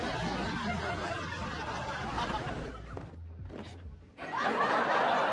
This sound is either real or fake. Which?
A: real